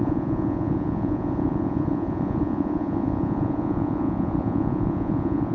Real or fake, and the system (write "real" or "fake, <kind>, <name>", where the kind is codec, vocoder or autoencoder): fake, vocoder, Vocos